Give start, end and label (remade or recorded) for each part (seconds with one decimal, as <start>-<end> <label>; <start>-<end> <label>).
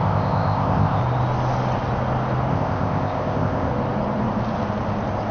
0.0-1.0 remade; 1.0-2.5 recorded; 2.5-3.7 remade; 3.7-5.3 recorded